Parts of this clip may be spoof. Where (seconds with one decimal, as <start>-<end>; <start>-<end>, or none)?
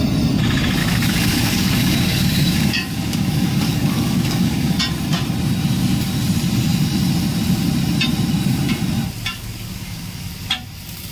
0.8-4.8; 9.3-10.3